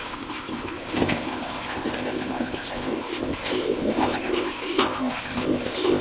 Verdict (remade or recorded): remade